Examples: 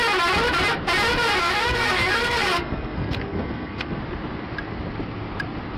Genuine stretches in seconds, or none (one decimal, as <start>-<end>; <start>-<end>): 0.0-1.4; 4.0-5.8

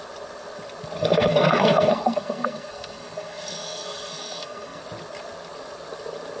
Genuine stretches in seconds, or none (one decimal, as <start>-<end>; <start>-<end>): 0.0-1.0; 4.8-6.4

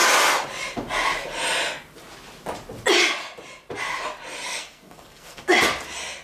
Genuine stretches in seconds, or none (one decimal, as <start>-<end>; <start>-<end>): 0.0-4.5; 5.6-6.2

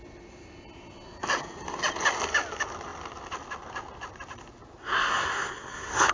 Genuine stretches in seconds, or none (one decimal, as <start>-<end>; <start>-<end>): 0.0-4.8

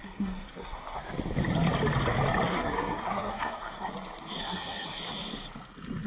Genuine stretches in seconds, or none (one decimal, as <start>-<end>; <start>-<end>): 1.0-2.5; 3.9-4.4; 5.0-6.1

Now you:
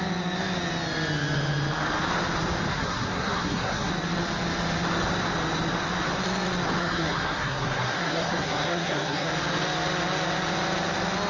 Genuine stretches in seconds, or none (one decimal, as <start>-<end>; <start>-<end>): 0.0-2.7; 3.9-6.8; 9.3-11.3

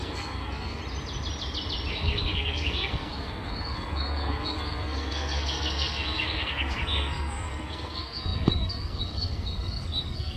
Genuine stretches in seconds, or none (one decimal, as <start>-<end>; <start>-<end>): 0.8-1.9